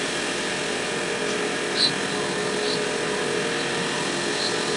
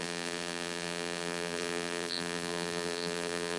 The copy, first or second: second